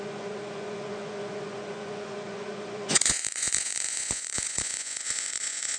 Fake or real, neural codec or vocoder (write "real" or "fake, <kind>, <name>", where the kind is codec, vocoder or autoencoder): fake, vocoder, Vocos